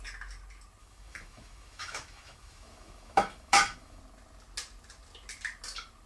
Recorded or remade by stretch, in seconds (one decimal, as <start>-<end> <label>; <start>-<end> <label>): 0.0-0.8 recorded; 0.8-4.0 remade; 4.0-6.1 recorded